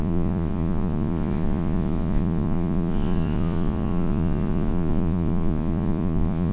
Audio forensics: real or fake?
fake